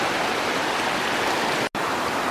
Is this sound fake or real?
real